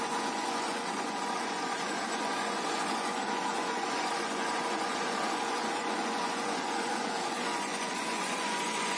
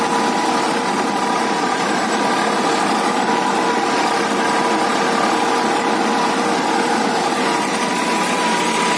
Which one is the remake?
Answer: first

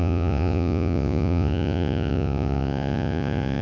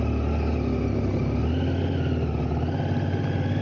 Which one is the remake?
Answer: first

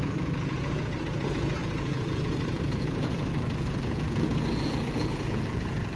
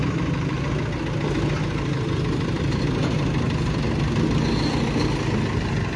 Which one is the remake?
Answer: first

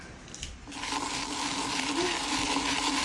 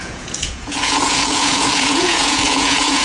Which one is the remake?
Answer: second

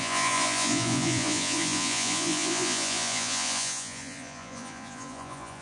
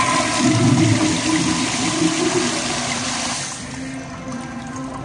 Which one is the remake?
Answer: first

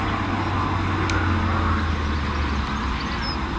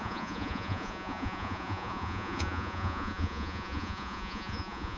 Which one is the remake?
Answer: second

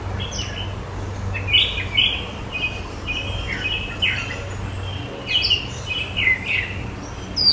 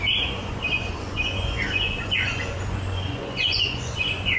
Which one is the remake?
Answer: second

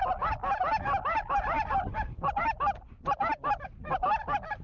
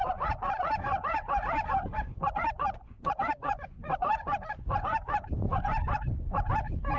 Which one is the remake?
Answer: second